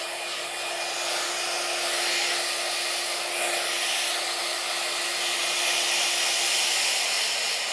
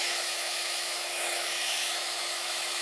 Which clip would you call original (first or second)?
first